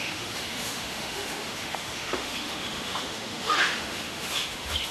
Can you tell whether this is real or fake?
fake